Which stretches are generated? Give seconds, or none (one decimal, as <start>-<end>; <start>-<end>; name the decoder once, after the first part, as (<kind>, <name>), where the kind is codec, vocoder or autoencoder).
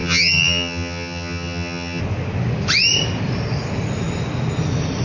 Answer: 0.0-2.0 (vocoder, HiFi-GAN)